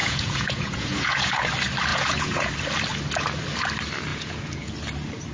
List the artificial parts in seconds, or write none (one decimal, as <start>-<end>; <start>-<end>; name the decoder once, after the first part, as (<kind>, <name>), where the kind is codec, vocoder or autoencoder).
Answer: 0.0-1.5 (vocoder, Vocos); 1.9-2.5; 4.1-4.7